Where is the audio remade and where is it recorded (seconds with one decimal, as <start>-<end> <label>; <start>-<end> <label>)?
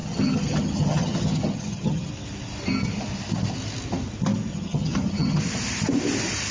0.0-2.1 remade; 2.1-4.5 recorded; 4.5-5.4 remade; 5.4-6.5 recorded